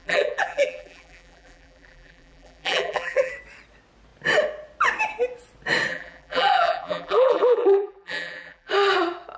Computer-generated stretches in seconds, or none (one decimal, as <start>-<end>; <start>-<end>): 0.0-3.3; 5.9-8.7